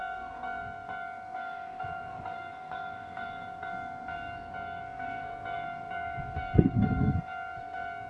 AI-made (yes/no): yes